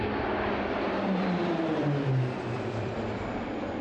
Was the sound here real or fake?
fake